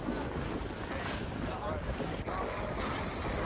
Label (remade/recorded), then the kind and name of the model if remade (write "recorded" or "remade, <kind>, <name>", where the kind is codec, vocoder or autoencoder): recorded